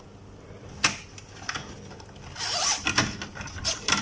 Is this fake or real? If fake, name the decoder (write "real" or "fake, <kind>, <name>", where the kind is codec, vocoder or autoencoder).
real